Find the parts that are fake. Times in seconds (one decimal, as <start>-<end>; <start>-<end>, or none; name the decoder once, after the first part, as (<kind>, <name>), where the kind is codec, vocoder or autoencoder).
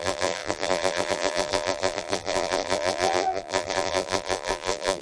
0.0-5.0 (vocoder, BigVGAN v2)